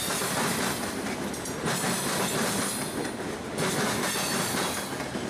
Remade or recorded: recorded